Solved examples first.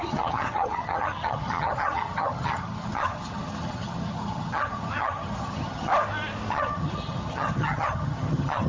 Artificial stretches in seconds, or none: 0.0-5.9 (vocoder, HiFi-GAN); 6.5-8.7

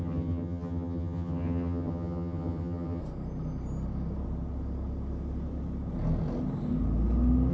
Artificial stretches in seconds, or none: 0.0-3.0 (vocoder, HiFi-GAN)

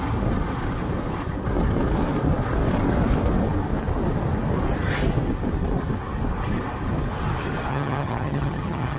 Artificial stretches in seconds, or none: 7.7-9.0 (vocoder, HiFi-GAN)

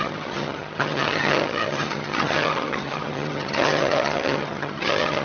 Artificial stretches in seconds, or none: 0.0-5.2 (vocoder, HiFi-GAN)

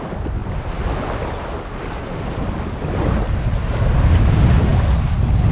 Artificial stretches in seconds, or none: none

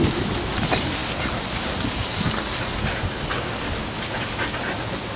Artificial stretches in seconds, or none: none

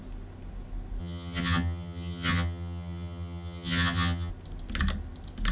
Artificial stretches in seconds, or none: 1.0-4.3 (vocoder, HiFi-GAN)

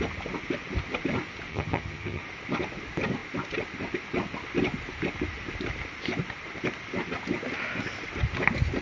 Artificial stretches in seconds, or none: 1.5-2.2 (vocoder, HiFi-GAN)